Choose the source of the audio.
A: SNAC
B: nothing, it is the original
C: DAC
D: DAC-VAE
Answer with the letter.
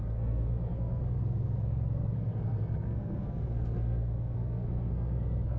A